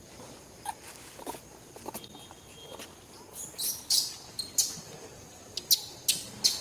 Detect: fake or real real